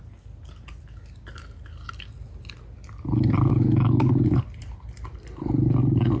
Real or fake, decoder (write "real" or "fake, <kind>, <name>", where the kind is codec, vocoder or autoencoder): real